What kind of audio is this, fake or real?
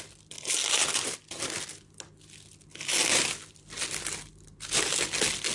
real